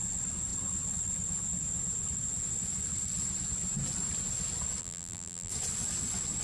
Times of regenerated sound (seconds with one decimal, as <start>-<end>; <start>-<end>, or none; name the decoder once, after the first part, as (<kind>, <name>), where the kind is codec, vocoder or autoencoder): 4.8-5.5 (vocoder, BigVGAN v2)